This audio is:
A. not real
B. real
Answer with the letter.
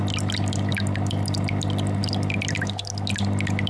B